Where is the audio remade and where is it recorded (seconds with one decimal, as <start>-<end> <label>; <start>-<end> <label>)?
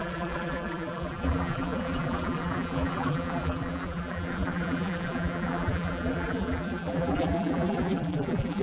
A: 0.0-8.6 remade